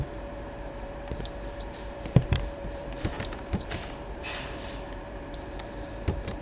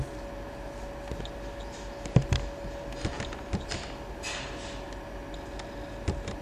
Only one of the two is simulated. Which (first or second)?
first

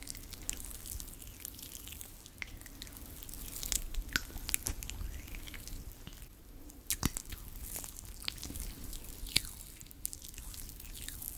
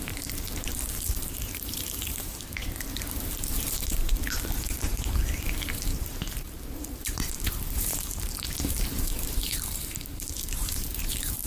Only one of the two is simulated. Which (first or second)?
second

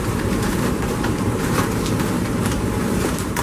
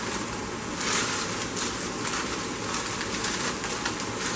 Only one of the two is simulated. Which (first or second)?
first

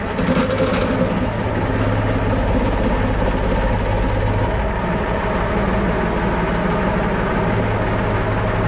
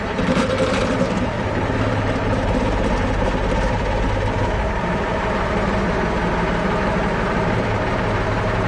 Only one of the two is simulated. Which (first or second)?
second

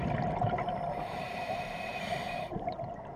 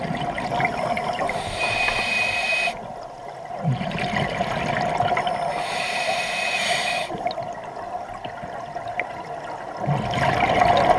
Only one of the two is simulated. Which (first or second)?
first